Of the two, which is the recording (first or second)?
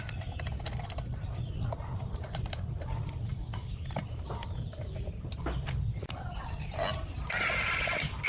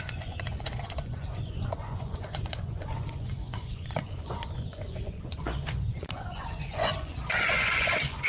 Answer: first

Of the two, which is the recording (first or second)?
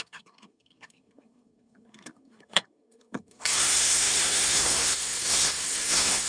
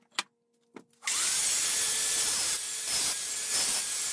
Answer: second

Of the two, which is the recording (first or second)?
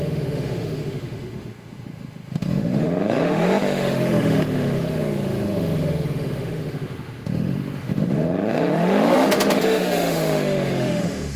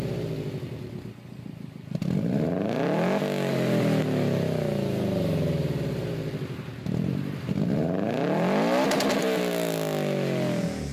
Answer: second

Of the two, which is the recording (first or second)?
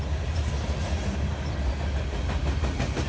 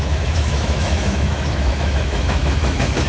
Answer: first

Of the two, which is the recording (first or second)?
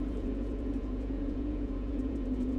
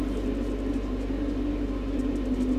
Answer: second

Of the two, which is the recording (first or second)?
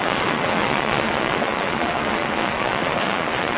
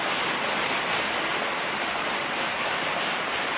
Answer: second